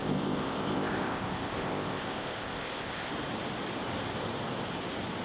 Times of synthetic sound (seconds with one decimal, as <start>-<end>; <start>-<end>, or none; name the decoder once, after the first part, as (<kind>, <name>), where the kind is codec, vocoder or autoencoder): 0.0-3.1 (codec, ZipCodec)